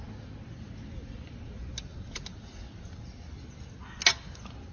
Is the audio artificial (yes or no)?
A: no